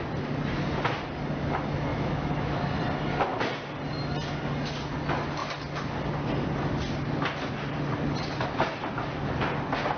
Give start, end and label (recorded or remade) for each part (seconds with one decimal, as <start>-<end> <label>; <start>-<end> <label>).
0.0-1.9 recorded; 1.9-2.8 remade; 2.8-10.0 recorded